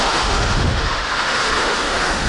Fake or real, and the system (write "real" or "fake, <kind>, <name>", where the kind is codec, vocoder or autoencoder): fake, autoencoder, DAC-VAE